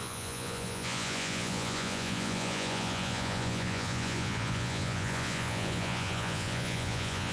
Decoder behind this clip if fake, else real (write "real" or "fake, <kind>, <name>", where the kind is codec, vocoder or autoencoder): fake, vocoder, Vocos